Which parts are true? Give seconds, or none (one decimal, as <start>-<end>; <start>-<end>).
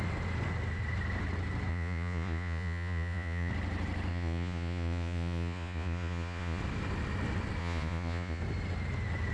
0.0-1.7; 3.5-4.1; 6.6-7.6; 8.4-9.3